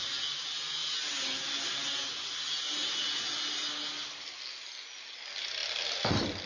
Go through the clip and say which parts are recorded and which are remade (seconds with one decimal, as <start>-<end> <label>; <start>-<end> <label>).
0.0-6.5 recorded